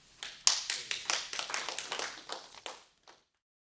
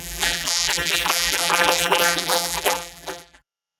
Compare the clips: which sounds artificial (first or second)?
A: second